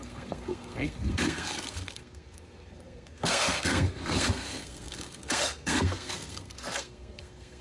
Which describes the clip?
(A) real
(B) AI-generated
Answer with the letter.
B